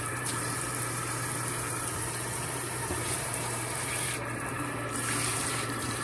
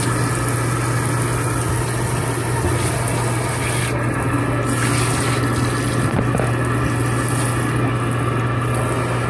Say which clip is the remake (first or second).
first